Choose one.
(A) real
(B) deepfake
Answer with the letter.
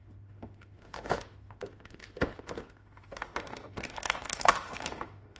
B